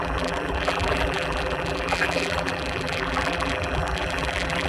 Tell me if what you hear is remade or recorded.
remade